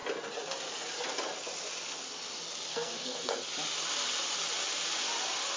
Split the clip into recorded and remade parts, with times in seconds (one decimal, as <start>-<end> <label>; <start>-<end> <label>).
0.0-2.7 recorded; 2.7-3.4 remade; 3.4-5.6 recorded